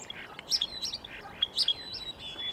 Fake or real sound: real